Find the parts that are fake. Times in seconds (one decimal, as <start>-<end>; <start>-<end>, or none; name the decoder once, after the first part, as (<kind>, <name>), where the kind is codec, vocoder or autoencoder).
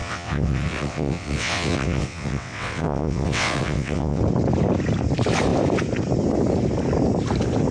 0.0-4.2 (vocoder, WaveNeXt)